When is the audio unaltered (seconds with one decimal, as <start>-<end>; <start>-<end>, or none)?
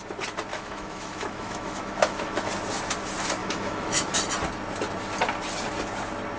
0.0-0.5; 2.5-3.4; 4.1-6.4